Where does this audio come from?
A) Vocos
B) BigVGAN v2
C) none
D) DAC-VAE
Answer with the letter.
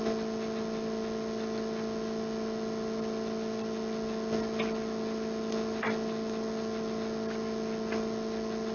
C